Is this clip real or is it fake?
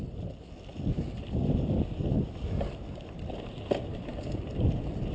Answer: real